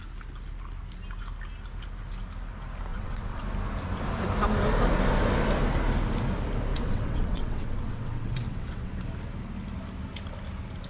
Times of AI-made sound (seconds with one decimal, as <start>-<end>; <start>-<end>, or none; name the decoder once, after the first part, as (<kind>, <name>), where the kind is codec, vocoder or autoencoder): 2.9-3.4 (vocoder, WaveNeXt); 6.7-8.9